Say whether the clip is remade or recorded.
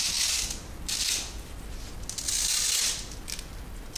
recorded